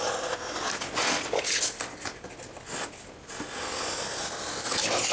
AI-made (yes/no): no